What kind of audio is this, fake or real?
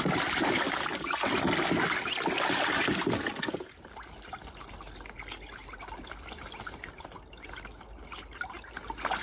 real